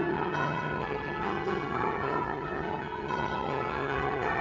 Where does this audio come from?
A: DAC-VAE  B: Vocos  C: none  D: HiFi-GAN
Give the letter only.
D